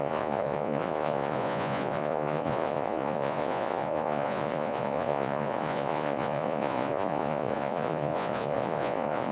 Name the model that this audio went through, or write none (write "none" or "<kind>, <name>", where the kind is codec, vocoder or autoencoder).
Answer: vocoder, Vocos